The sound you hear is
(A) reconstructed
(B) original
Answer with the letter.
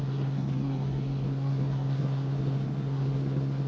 A